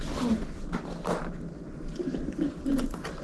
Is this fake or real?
real